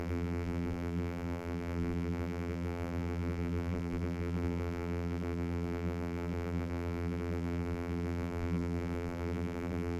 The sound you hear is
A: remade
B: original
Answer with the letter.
A